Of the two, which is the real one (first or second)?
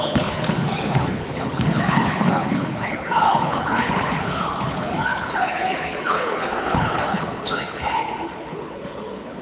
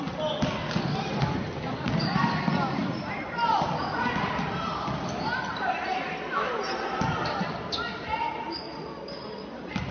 second